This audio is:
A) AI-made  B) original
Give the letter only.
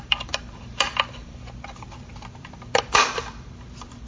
A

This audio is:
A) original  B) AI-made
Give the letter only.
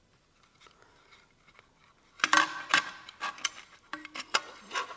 A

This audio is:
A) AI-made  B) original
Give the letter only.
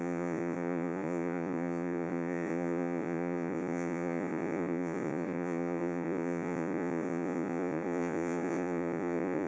A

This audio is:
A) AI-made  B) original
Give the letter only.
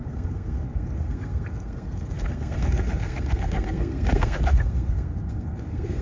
A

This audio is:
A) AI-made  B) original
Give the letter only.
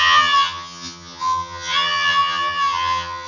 A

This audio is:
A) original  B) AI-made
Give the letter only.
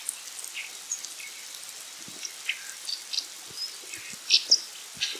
A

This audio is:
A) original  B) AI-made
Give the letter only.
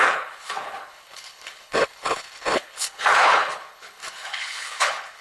B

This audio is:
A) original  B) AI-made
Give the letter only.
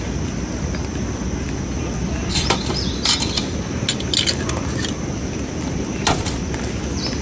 A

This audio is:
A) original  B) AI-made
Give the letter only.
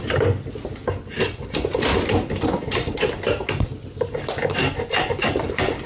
A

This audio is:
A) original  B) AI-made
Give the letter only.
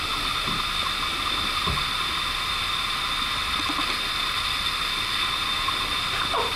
A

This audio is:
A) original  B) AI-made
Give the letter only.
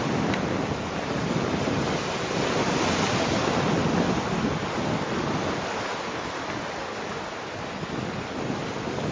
A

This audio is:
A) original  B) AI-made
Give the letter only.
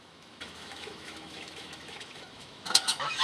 B